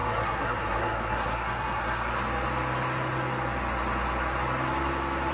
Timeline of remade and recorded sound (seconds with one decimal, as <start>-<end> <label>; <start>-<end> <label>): 0.0-2.1 remade; 2.1-5.3 recorded